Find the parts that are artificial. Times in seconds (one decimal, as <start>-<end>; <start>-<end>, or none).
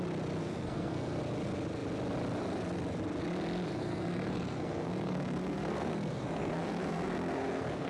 0.4-1.2; 3.8-7.9